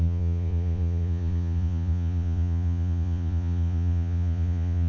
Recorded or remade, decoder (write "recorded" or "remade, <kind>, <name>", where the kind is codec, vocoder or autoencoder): remade, vocoder, Vocos